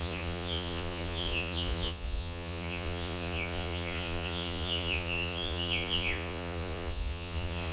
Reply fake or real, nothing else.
fake